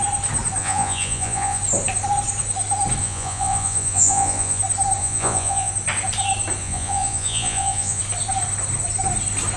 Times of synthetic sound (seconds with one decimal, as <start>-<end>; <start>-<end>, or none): 0.6-1.6; 3.0-4.6; 5.0-5.7; 6.6-8.0